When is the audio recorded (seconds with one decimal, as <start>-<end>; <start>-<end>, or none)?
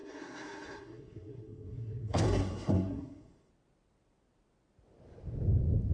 3.5-5.9